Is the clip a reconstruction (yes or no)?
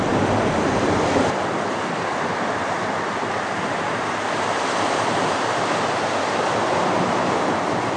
no